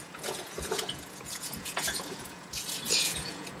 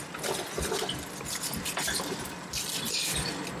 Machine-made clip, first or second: first